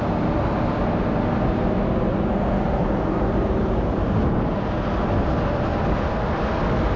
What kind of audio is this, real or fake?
real